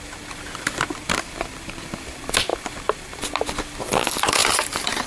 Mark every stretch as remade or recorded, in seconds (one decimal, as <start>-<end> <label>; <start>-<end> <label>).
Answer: 0.0-4.4 recorded; 4.4-5.1 remade